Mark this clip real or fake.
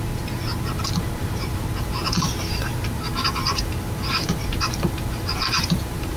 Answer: fake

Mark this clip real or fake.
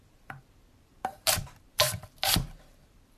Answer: fake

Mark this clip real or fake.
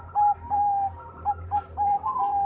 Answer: fake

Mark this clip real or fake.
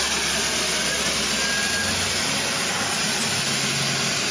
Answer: real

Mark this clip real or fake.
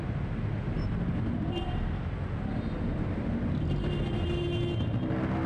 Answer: real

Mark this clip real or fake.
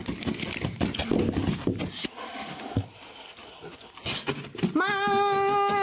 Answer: real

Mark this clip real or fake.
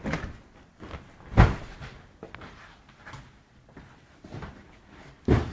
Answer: real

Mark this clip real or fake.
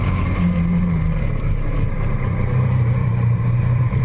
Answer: fake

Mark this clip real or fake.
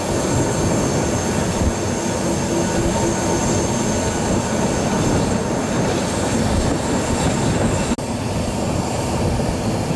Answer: real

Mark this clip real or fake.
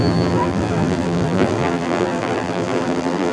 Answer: fake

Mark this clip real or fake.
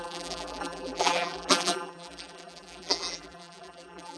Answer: fake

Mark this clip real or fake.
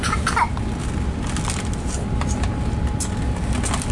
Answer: real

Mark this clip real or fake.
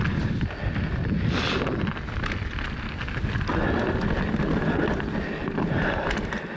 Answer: real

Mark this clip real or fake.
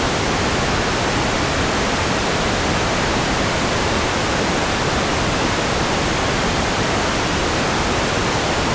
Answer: fake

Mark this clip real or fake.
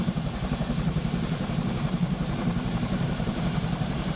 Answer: fake